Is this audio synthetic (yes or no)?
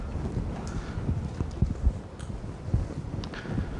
no